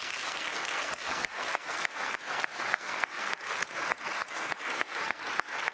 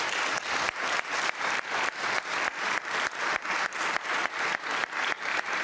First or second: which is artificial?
first